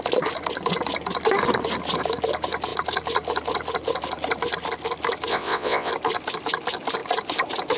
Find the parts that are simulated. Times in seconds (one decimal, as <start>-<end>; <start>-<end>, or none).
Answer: 5.3-5.9